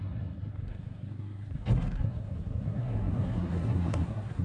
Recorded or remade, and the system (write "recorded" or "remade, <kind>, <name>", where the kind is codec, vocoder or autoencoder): remade, codec, SNAC